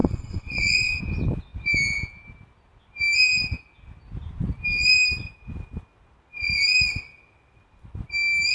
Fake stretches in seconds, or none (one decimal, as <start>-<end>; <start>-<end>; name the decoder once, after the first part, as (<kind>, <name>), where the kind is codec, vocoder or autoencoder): 0.0-1.0 (vocoder, WaveNeXt)